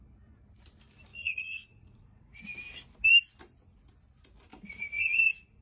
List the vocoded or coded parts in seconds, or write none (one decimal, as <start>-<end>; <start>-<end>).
1.1-2.4; 4.5-5.6